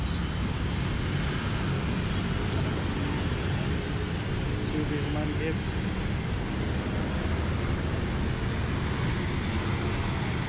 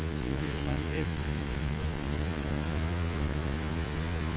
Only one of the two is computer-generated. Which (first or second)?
second